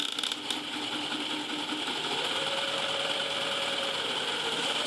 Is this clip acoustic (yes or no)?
yes